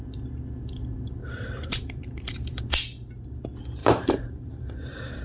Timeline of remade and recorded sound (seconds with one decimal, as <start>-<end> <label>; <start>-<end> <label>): 0.0-1.2 recorded; 1.2-2.6 remade; 2.6-3.8 recorded; 3.8-5.2 remade